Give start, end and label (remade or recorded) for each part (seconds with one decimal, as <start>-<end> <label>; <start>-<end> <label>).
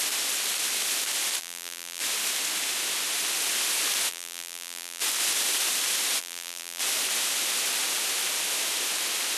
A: 0.0-1.4 recorded; 1.4-2.0 remade; 2.0-4.1 recorded; 4.1-5.0 remade; 5.0-6.2 recorded; 6.2-6.8 remade; 6.8-9.4 recorded